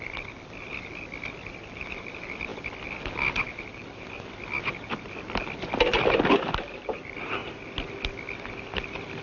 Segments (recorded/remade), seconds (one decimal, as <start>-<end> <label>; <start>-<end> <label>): 0.0-9.2 recorded